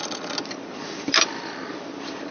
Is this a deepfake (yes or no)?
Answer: yes